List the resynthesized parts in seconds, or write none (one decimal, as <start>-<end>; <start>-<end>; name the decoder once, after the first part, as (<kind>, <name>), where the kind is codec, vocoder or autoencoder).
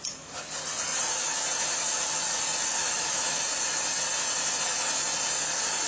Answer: 2.8-3.4 (autoencoder, DAC-VAE)